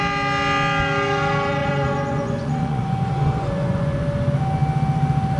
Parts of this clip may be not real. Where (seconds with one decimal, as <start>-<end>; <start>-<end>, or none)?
1.6-4.0